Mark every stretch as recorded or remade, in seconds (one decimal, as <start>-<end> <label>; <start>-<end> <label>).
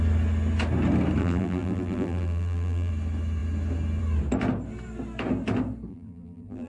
0.0-1.2 recorded; 1.2-2.9 remade; 2.9-5.9 recorded; 5.9-6.7 remade